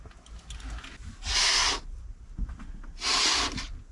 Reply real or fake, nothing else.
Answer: real